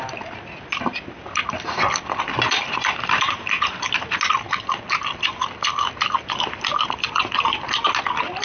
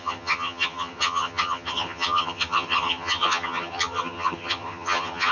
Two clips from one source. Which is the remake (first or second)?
second